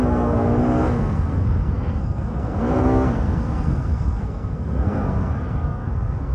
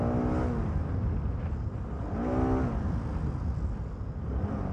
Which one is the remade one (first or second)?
first